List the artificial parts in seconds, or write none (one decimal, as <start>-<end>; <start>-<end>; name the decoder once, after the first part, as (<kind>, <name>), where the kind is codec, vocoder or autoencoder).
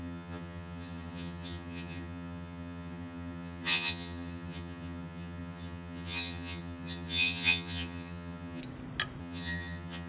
0.0-8.6 (vocoder, HiFi-GAN); 9.2-10.1